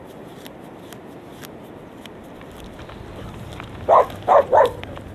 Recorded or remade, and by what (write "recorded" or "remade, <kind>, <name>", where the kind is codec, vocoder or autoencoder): recorded